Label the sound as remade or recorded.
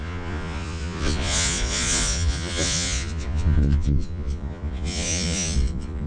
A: remade